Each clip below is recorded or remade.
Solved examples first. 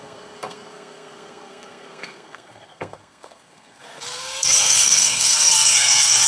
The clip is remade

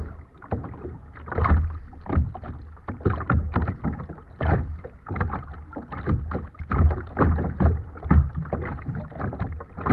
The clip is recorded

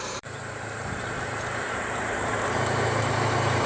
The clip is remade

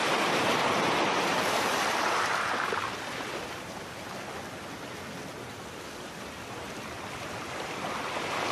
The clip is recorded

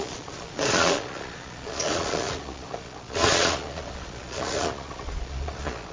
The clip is remade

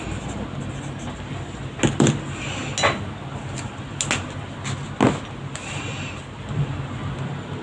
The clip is recorded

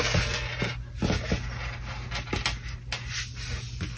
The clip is recorded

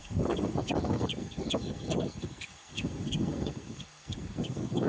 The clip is remade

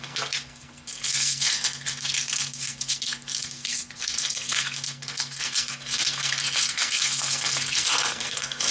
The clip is remade